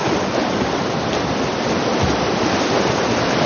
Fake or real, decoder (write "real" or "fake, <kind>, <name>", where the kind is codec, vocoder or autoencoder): real